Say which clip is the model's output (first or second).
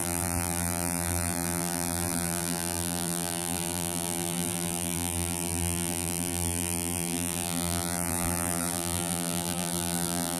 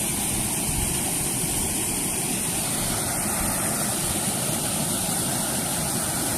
first